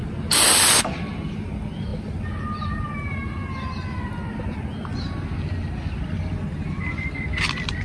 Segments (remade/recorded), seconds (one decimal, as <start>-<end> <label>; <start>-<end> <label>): 0.0-7.8 recorded

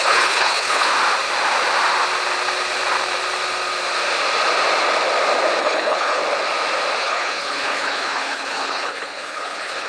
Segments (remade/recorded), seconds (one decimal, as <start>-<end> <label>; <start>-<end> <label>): 0.0-0.9 remade; 0.9-5.6 recorded; 5.6-6.2 remade; 6.2-7.0 recorded; 7.0-9.9 remade

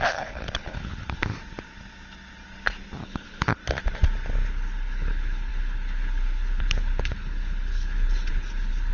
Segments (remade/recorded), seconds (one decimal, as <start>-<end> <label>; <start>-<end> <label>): 0.0-1.3 remade; 1.3-3.0 recorded; 3.0-3.6 remade; 3.6-4.5 recorded; 4.5-8.9 remade